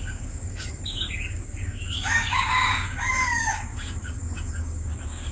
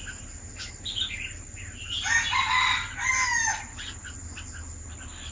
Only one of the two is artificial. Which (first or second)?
first